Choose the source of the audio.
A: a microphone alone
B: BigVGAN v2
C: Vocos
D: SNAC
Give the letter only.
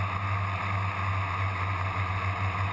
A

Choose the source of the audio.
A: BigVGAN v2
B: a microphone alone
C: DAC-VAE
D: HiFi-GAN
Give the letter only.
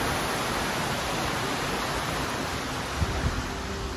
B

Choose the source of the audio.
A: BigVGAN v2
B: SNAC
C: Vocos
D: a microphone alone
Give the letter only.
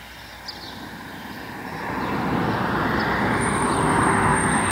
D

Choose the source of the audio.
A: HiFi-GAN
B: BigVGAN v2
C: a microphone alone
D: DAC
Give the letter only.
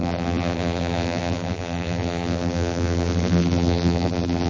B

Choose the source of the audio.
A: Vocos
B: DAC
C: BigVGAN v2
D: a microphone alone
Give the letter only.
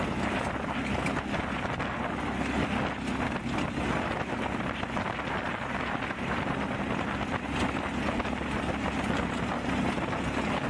D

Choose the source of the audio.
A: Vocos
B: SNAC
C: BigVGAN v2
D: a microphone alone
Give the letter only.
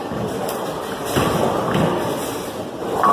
C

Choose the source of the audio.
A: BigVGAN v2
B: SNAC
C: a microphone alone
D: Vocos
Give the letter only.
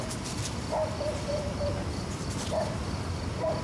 C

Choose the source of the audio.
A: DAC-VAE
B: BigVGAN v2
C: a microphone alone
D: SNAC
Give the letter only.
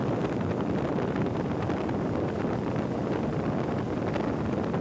C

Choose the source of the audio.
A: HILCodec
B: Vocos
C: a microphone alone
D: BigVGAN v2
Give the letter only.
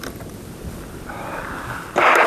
C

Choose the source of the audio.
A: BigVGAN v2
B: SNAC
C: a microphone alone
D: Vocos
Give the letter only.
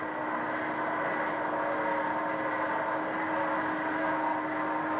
C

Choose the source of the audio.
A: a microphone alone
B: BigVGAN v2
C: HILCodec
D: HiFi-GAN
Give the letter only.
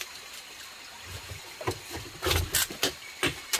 A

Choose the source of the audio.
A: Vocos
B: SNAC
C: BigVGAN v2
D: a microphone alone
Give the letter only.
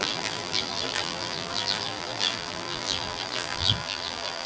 C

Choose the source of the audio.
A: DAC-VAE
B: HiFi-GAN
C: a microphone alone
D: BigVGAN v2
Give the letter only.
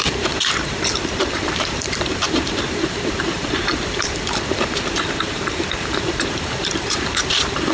D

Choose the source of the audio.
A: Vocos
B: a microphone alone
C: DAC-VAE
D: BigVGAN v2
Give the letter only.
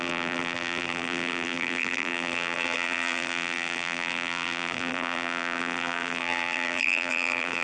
D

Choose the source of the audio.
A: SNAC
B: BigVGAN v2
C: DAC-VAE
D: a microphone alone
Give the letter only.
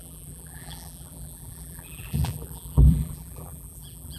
B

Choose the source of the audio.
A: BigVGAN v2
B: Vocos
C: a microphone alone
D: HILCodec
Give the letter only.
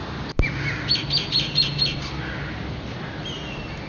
C